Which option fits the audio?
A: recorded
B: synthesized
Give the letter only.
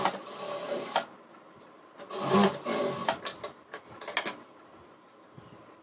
A